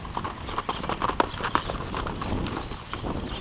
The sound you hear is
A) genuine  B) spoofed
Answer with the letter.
A